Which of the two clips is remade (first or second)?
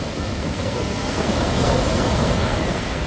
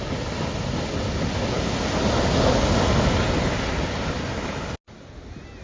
first